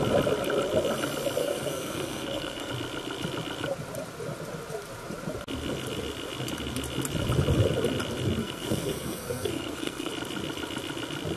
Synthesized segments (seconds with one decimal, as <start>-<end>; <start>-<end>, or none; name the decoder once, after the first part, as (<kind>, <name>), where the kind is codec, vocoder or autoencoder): 1.4-2.7 (codec, SNAC); 8.4-10.1